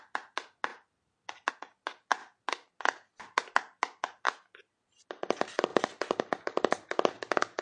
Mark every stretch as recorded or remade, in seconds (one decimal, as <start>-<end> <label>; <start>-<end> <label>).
0.0-7.6 recorded